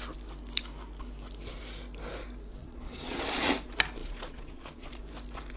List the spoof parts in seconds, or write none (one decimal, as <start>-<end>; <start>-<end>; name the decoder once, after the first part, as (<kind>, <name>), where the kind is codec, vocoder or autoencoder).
2.6-3.2 (vocoder, Vocos); 4.0-4.9

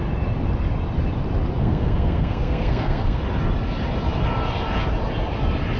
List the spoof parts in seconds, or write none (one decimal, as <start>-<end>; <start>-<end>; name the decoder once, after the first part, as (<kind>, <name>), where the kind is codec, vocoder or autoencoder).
1.6-3.2 (codec, SNAC)